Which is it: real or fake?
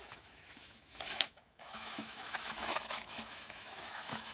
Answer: fake